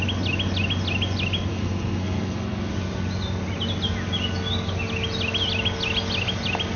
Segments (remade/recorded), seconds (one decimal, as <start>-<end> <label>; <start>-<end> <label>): 0.0-1.5 recorded; 1.5-2.7 remade; 2.7-6.8 recorded